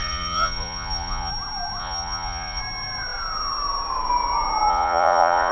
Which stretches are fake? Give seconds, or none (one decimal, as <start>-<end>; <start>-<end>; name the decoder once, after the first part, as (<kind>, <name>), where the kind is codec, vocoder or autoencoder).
0.0-1.3 (vocoder, Vocos); 1.8-2.6; 4.7-5.5